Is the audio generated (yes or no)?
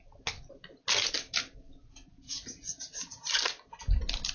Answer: no